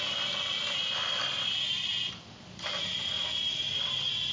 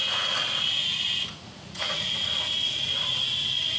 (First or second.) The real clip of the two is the first